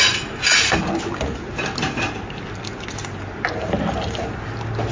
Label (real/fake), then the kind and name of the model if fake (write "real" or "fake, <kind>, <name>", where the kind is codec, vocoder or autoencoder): real